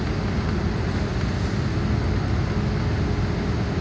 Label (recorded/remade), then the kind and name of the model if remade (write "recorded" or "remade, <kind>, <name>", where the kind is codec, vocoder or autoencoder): recorded